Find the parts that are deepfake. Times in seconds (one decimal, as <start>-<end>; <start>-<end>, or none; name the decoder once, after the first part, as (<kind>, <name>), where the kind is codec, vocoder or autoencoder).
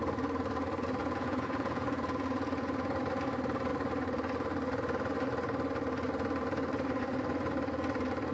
1.0-3.0 (vocoder, Vocos)